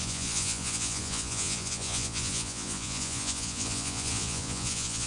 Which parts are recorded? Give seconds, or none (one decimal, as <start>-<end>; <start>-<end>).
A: none